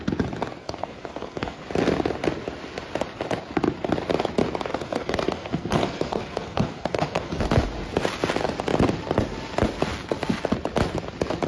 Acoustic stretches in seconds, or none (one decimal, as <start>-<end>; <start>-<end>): 0.0-0.6; 1.6-4.7; 7.4-11.5